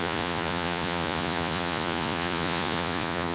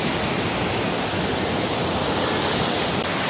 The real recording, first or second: second